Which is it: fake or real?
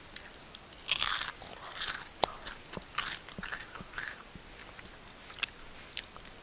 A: real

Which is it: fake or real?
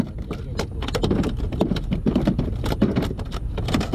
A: real